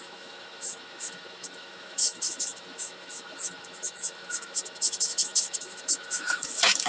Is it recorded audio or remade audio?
remade